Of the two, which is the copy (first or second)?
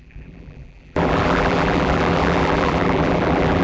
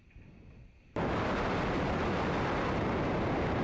first